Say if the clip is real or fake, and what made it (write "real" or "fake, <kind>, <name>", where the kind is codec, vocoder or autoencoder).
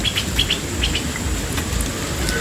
real